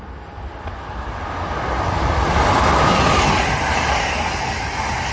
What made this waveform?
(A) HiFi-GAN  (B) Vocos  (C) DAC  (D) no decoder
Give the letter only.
D